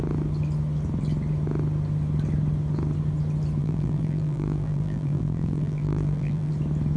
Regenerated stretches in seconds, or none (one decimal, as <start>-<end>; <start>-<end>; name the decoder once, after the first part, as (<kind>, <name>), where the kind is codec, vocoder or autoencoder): 3.6-6.5 (vocoder, BigVGAN v2)